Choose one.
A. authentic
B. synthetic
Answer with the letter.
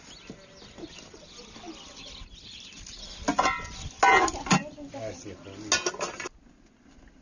A